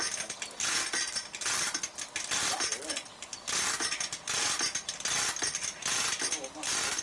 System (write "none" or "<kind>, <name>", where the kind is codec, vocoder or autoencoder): none